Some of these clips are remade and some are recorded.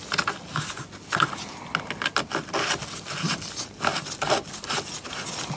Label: recorded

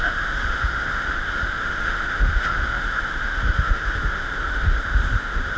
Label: remade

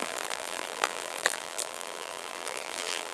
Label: remade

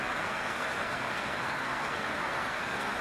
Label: remade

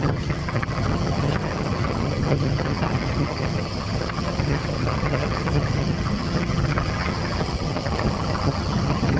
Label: remade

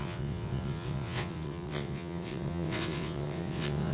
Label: remade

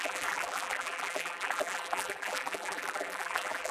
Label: remade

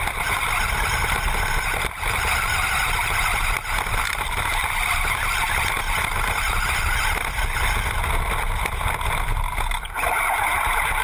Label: recorded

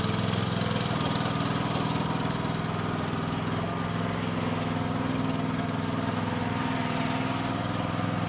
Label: recorded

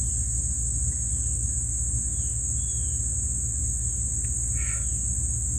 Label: recorded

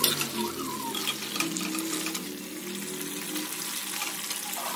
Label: recorded